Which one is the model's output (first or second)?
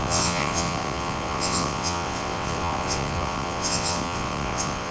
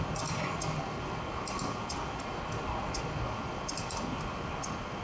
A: first